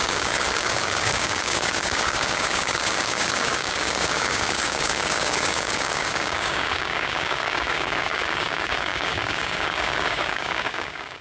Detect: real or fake fake